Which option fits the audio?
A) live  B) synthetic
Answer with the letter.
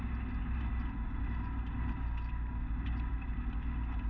A